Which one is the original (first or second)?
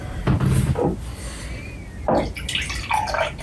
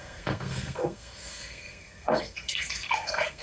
first